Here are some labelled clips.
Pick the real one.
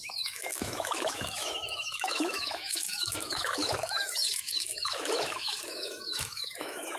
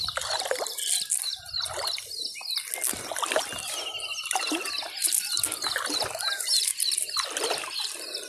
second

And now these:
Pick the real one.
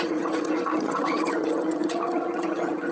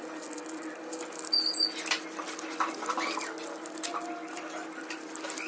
second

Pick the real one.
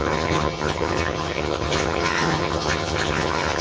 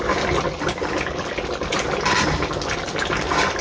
second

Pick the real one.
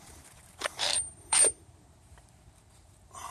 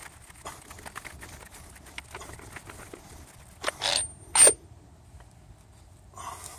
second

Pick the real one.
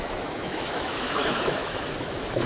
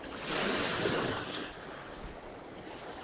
second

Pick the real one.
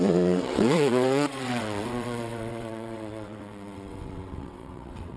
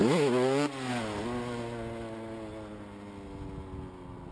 second